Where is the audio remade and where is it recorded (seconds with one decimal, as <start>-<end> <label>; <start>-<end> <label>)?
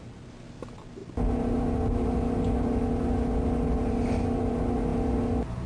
0.0-5.7 recorded